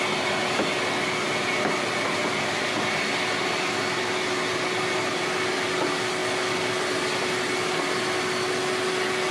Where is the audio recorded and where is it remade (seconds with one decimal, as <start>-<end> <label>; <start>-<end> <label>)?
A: 0.0-9.3 recorded